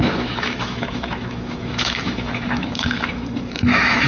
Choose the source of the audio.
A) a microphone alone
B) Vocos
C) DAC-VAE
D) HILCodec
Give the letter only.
C